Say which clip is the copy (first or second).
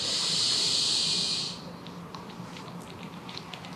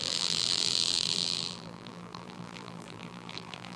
second